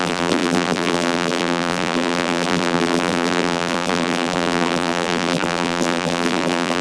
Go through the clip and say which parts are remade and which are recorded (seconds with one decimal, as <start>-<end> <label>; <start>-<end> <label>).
0.0-6.8 remade

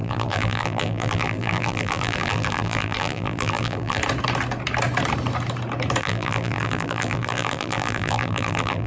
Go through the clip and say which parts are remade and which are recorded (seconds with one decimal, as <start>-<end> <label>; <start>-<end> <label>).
0.0-4.0 remade; 4.0-6.0 recorded; 6.0-8.9 remade

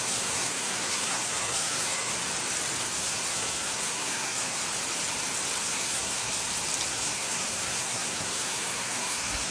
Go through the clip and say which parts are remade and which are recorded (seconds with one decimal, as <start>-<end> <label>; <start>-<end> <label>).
0.0-2.1 remade; 2.1-2.8 recorded; 2.8-4.6 remade; 4.6-5.6 recorded; 5.6-6.4 remade; 6.4-6.9 recorded; 6.9-9.5 remade

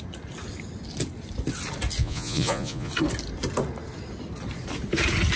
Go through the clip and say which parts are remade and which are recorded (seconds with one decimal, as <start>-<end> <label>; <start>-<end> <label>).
0.0-2.0 recorded; 2.0-2.9 remade; 2.9-5.4 recorded

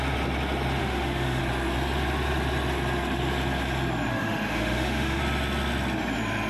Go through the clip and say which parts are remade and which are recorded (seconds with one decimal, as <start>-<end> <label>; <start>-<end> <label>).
0.0-0.8 recorded; 0.8-1.4 remade; 1.4-4.1 recorded; 4.1-5.2 remade; 5.2-6.5 recorded